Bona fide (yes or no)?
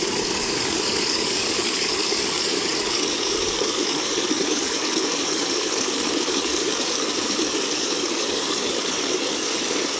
no